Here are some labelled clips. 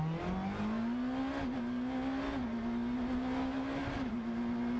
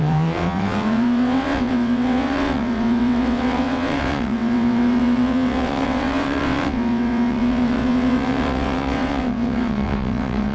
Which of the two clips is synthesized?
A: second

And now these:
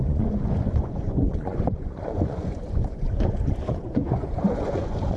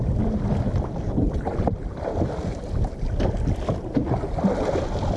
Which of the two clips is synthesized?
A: first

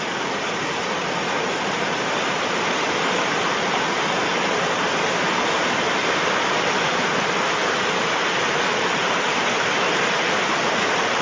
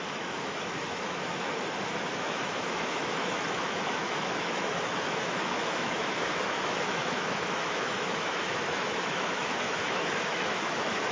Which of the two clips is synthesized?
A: second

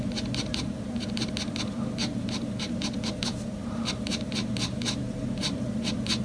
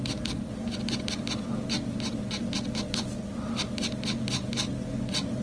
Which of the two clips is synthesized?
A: first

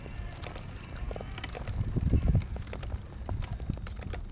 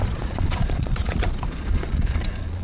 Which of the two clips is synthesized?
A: second